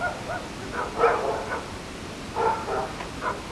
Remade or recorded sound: recorded